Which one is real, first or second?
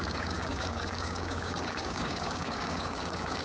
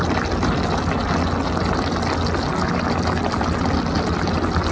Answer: second